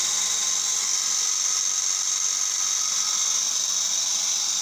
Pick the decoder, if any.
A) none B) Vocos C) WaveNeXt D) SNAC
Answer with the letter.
A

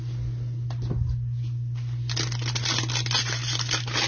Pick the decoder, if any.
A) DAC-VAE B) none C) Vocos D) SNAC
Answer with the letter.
B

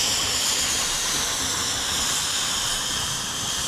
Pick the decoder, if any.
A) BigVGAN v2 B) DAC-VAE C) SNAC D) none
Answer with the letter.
D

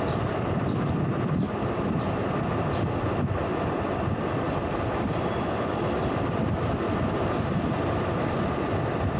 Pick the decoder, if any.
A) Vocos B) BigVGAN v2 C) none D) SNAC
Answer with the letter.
C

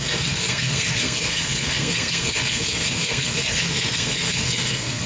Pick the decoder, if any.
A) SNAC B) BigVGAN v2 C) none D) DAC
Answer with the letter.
A